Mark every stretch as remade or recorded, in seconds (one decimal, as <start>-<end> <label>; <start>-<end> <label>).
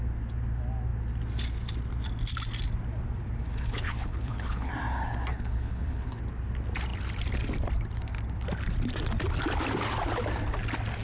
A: 0.0-3.5 recorded; 3.5-4.7 remade; 4.7-5.3 recorded; 5.3-6.2 remade; 6.2-11.0 recorded